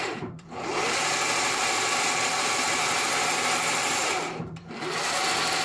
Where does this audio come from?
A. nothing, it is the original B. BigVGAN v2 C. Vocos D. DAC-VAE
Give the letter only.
B